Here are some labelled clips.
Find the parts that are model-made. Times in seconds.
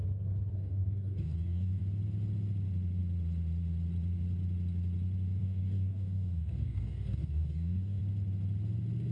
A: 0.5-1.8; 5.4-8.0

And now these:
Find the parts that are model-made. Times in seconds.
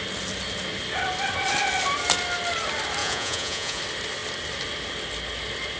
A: 3.0-3.8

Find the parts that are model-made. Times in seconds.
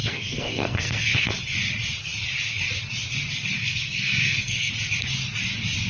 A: 0.0-1.3; 3.6-4.7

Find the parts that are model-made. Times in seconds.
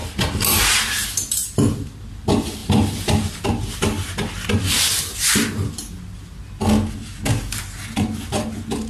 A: none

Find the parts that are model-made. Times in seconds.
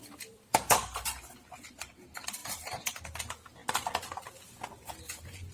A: 0.0-1.9; 2.4-3.0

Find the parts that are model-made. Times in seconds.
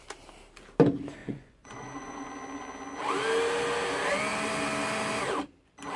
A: 1.2-2.3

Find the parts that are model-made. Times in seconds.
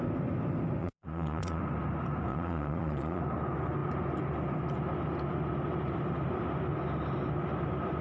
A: 0.8-1.6; 2.3-3.2